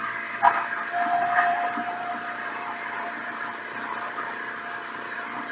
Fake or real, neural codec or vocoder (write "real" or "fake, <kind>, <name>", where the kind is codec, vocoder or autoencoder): fake, vocoder, BigVGAN v2